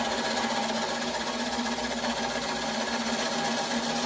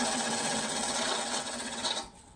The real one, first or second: first